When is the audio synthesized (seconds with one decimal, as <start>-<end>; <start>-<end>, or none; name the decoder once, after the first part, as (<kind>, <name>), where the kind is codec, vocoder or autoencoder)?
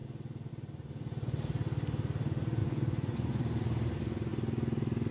2.6-3.4 (vocoder, Vocos)